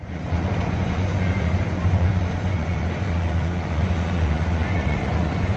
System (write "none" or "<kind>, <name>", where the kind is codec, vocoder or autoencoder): vocoder, Vocos